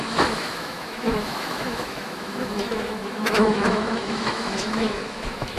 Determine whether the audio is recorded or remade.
remade